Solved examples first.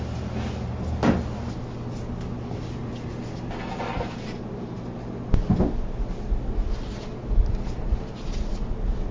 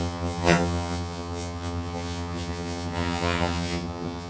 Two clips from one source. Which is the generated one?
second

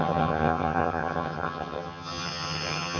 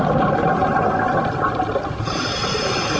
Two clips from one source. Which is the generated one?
first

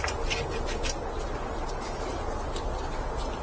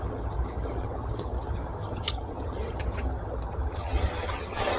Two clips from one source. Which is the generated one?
second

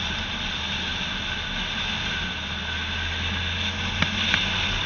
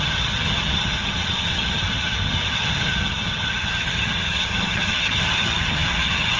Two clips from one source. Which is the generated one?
second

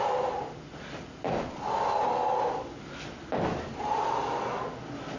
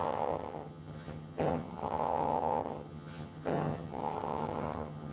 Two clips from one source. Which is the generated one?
second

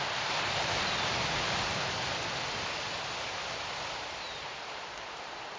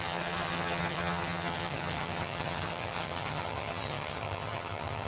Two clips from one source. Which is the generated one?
second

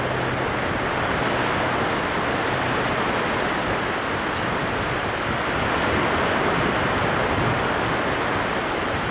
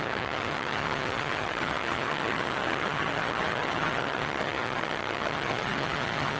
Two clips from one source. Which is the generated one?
second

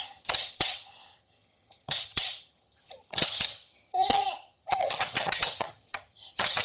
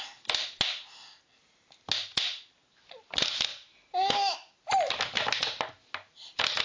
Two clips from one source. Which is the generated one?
first